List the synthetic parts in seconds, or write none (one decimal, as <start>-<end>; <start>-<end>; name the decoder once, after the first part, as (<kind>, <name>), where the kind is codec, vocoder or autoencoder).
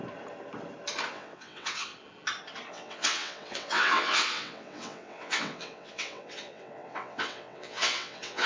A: 1.1-1.9 (vocoder, WaveNeXt); 2.7-8.5